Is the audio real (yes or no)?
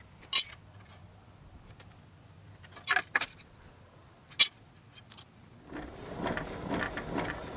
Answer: yes